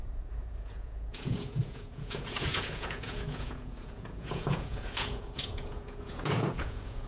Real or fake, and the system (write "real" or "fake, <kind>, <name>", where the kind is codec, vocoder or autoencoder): fake, vocoder, Vocos